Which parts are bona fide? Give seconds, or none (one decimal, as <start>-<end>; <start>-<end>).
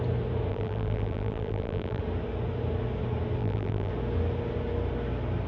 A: 0.0-0.5; 2.0-3.4; 3.9-5.5